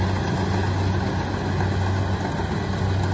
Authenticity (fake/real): real